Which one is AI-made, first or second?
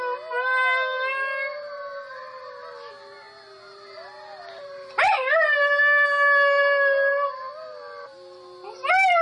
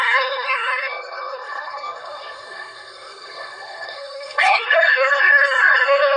second